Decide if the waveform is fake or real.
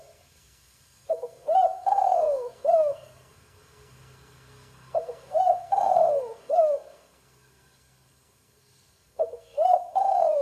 fake